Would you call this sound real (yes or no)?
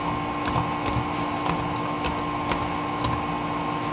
yes